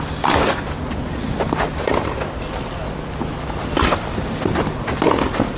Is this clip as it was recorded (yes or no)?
yes